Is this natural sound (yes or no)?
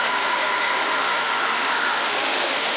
no